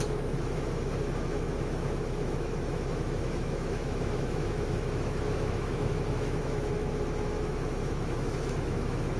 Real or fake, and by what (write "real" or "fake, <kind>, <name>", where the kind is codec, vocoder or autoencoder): fake, autoencoder, DAC-VAE